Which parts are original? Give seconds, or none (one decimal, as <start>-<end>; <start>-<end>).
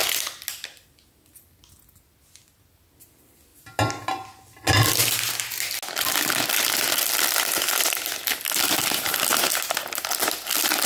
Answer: 0.0-10.9